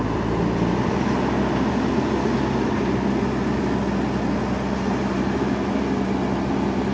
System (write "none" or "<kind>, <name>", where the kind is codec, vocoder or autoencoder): none